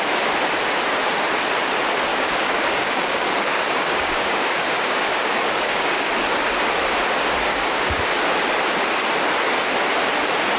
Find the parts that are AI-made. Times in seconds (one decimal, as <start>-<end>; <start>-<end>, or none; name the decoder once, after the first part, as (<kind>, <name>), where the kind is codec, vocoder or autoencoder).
2.1-6.1 (codec, DAC); 7.5-8.0